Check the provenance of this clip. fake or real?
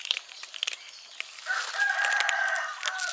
real